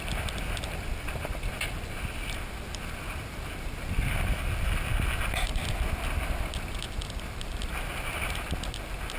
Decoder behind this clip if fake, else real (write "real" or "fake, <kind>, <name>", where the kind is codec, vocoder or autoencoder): real